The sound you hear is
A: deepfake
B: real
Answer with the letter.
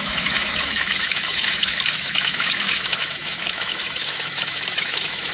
A